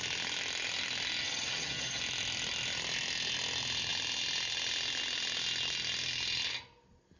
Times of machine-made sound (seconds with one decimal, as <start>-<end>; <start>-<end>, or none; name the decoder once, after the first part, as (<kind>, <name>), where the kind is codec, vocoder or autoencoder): 1.2-2.0 (vocoder, HiFi-GAN)